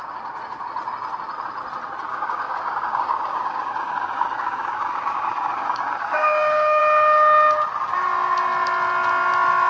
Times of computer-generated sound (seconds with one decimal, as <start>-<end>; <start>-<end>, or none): 2.1-6.8